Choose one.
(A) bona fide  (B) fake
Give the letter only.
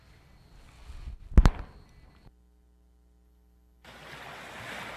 A